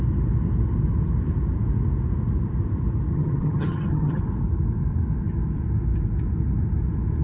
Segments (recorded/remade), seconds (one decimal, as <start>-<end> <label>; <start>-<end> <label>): 0.0-3.1 recorded; 3.1-4.2 remade; 4.2-7.2 recorded